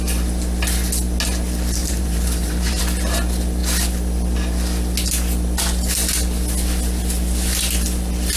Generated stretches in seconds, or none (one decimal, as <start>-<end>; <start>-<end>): 1.8-2.8

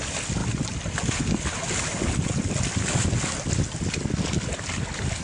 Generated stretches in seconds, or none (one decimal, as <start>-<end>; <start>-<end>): none

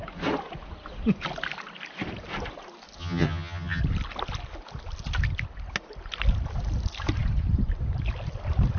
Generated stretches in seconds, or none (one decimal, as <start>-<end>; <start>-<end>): 3.0-3.8

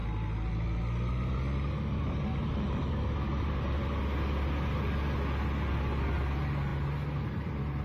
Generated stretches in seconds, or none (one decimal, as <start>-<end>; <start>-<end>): none